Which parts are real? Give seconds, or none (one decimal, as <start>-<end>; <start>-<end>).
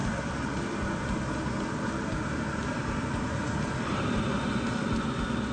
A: 0.0-5.5